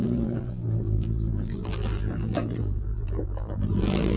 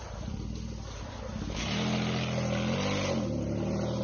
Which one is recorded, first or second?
second